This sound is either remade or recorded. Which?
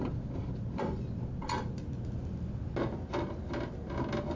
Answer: recorded